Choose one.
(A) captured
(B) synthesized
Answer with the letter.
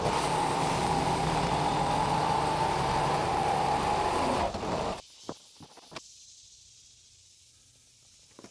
A